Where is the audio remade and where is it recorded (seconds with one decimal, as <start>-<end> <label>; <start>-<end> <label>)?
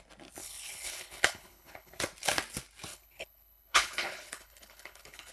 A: 0.0-0.4 recorded; 0.4-2.0 remade; 2.0-2.9 recorded; 2.9-5.3 remade